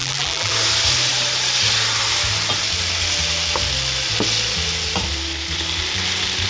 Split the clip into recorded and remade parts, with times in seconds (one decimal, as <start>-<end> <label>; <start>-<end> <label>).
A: 0.0-0.5 remade; 0.5-6.5 recorded